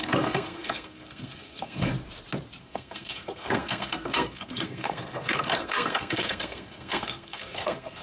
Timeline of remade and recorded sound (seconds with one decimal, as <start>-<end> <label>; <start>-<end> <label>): 0.0-1.9 remade; 1.9-2.6 recorded; 2.6-8.0 remade